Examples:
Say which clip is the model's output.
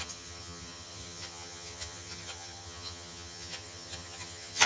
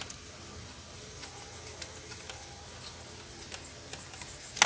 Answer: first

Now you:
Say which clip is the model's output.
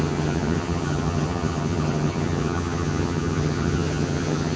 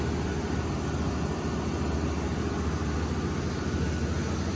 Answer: first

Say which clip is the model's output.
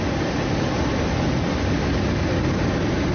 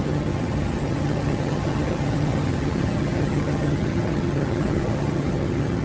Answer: second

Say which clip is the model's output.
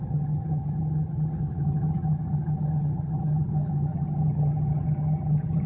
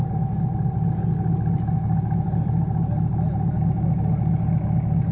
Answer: first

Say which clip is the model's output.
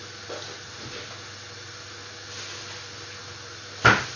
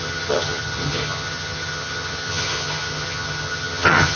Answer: second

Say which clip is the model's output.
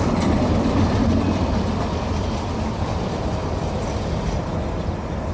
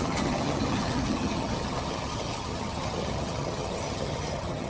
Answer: second